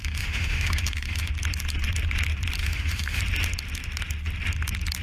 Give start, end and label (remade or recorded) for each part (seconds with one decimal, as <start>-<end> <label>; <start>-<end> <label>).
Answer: 0.0-1.3 remade; 1.3-2.6 recorded; 2.6-3.2 remade; 3.2-5.0 recorded